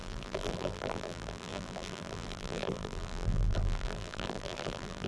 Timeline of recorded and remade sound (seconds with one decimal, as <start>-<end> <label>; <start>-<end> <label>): 0.0-5.1 remade